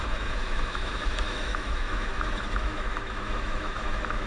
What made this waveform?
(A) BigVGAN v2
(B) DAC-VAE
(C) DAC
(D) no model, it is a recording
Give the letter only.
B